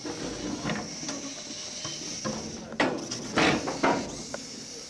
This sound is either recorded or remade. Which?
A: recorded